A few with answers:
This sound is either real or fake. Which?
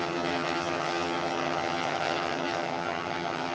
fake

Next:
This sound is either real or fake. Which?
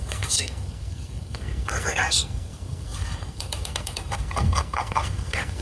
fake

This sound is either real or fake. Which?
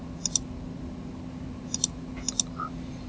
real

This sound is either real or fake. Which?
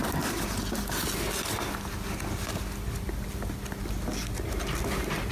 real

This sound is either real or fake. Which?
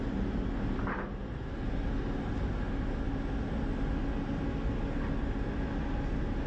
real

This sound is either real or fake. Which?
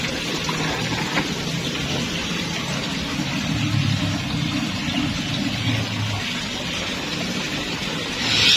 real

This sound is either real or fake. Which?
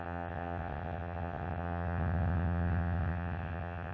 fake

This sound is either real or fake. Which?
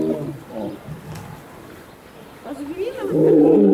real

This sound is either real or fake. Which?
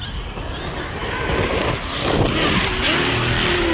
real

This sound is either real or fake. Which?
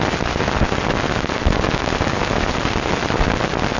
real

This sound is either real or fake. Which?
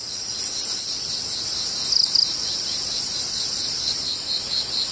real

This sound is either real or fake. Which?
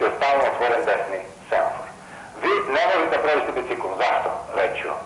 real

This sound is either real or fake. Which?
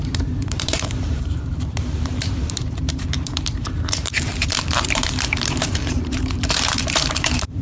fake